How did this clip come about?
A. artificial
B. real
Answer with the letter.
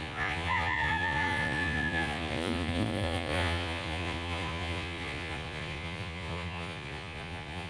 A